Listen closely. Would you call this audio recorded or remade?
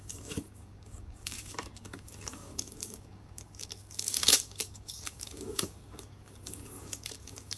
remade